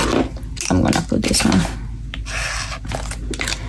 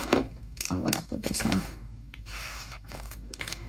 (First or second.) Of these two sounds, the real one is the first